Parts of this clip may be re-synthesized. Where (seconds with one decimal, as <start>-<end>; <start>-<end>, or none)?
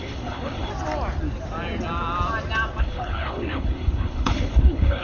0.0-0.7; 2.8-5.0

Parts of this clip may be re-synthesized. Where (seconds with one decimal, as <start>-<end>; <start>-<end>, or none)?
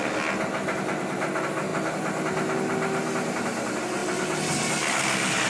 none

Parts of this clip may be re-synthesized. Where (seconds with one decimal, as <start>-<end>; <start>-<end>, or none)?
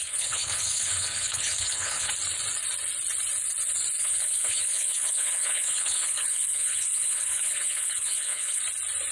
0.0-2.1; 4.0-8.6